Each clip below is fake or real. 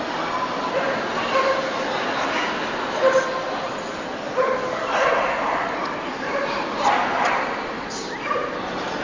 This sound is real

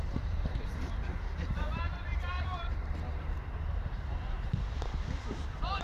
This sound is fake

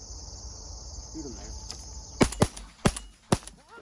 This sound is real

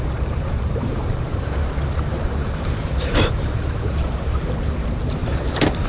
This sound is fake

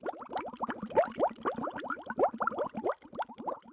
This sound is real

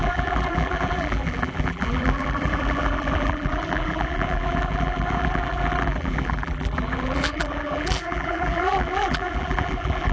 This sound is fake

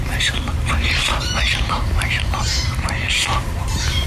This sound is fake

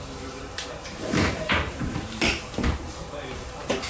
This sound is fake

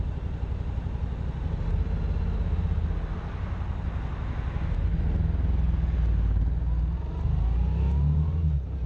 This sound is real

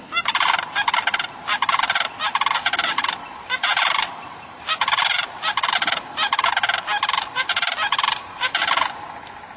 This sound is real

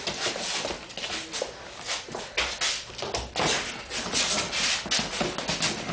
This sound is real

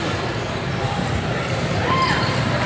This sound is fake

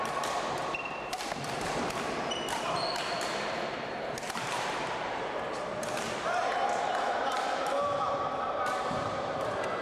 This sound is fake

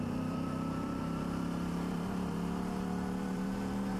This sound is fake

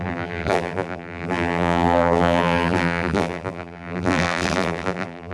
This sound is fake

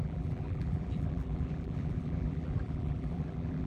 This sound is fake